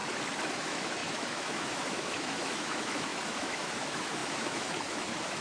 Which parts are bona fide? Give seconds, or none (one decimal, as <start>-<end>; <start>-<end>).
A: 0.0-0.6